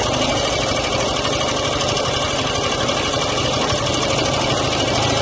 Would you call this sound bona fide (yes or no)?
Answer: yes